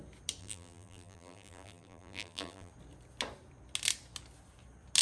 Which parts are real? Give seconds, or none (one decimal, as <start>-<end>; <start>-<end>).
0.0-0.4; 2.7-5.0